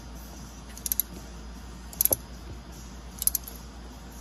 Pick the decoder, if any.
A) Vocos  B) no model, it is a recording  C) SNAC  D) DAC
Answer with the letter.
B